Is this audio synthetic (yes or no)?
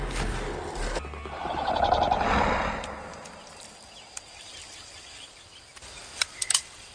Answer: no